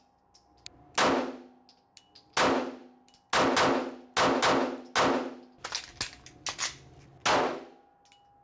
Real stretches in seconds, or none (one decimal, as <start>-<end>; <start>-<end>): 0.0-8.4